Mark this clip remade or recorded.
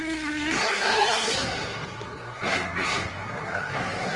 remade